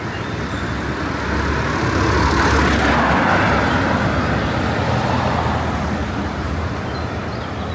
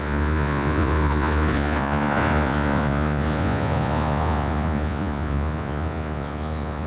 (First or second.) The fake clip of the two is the second